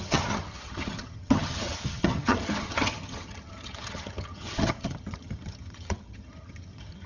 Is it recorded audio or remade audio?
remade